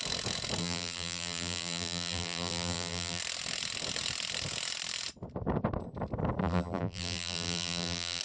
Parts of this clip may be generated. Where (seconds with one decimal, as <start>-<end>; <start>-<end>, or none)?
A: 0.6-3.2; 6.4-8.2